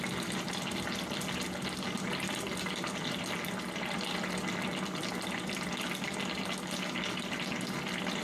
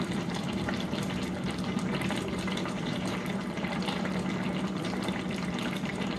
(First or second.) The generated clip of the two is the second